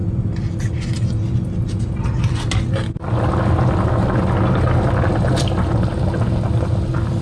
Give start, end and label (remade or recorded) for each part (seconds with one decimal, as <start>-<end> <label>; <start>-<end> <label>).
0.0-7.2 recorded

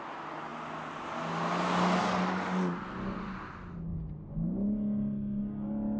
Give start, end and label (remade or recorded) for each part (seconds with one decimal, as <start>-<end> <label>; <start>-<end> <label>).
0.0-6.0 recorded